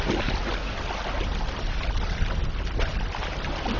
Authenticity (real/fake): real